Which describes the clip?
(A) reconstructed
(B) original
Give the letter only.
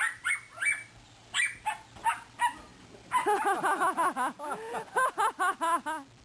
B